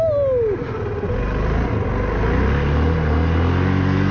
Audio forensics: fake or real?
real